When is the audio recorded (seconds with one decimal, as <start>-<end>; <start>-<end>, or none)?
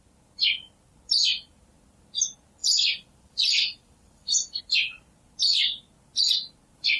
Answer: 0.0-2.6; 4.6-7.0